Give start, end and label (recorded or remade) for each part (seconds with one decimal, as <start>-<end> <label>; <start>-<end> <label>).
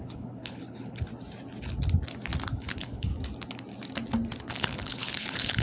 0.0-1.1 remade; 1.1-2.5 recorded; 2.5-3.1 remade; 3.1-4.4 recorded; 4.4-5.6 remade